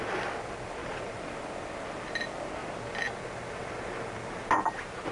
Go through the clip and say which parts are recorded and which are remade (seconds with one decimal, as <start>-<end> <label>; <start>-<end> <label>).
0.0-0.8 recorded; 0.8-1.4 remade; 1.4-5.1 recorded